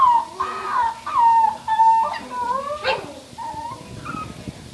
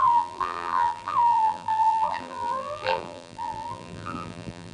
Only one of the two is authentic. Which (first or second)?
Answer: first